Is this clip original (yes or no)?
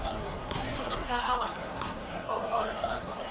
no